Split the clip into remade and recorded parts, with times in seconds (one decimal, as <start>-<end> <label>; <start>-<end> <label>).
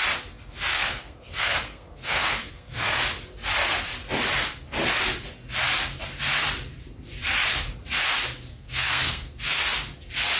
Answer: 0.0-0.7 recorded; 0.7-3.0 remade; 3.0-8.5 recorded; 8.5-9.6 remade; 9.6-10.4 recorded